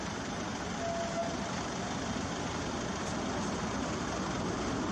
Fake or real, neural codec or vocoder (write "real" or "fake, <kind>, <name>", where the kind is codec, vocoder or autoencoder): real